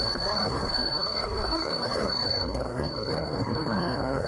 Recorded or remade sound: remade